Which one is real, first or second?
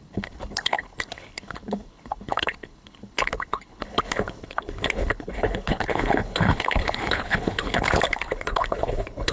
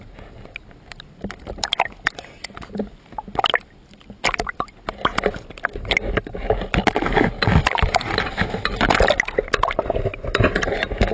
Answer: second